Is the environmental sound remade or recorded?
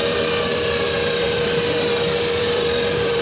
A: remade